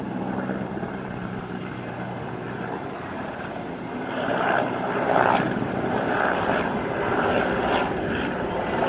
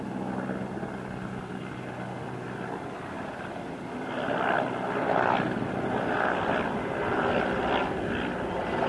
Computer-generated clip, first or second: first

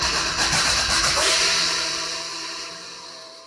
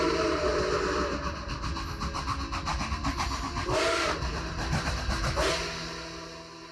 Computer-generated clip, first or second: first